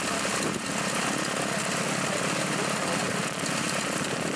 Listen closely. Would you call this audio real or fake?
real